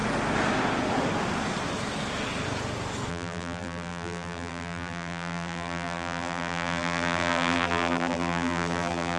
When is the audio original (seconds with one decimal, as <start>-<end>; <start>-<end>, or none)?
0.0-3.1